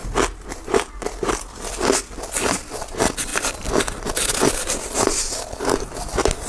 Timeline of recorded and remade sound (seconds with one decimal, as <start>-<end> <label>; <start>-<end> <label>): 0.0-6.5 recorded